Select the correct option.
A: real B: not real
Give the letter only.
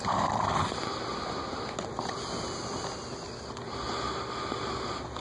A